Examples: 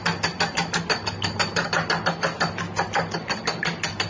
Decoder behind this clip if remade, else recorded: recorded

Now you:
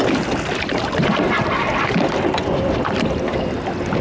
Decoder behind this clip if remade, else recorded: recorded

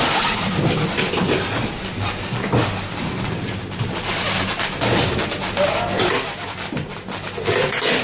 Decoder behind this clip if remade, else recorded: remade, vocoder, BigVGAN v2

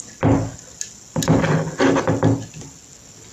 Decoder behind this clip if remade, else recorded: recorded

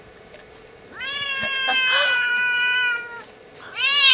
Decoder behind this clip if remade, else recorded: remade, vocoder, BigVGAN v2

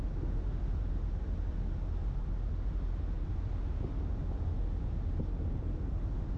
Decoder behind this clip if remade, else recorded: recorded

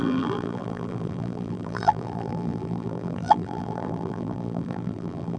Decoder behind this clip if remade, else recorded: remade, vocoder, BigVGAN v2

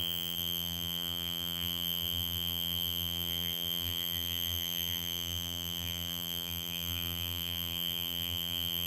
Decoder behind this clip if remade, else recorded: remade, vocoder, BigVGAN v2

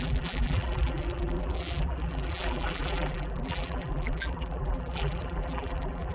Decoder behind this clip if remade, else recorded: remade, vocoder, BigVGAN v2